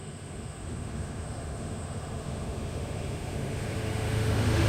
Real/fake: fake